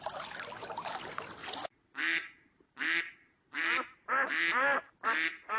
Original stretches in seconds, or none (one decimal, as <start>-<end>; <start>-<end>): 0.0-5.6